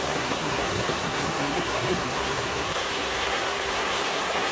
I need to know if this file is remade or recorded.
remade